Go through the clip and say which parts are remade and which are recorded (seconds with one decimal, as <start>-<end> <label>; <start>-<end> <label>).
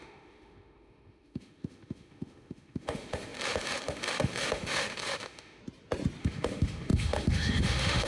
0.0-5.6 remade; 5.6-6.2 recorded; 6.2-8.1 remade